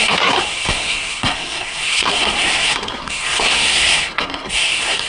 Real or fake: fake